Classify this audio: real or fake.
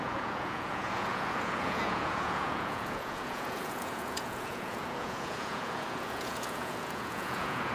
fake